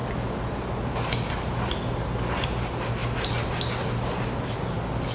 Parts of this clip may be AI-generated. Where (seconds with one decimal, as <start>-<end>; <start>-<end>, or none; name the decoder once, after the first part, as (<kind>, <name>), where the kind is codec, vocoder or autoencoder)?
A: 3.0-4.4 (vocoder, BigVGAN v2)